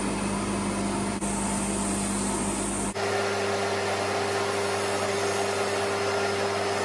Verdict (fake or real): real